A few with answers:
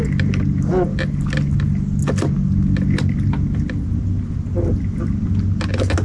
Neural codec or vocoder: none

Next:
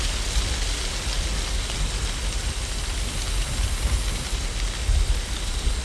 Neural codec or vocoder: none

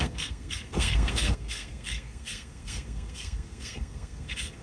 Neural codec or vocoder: codec, SNAC